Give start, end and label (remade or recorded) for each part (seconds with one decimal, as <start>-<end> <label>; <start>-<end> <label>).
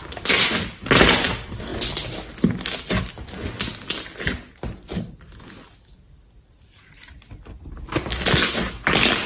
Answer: 0.0-9.3 recorded